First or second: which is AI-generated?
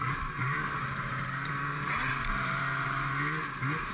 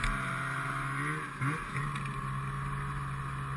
first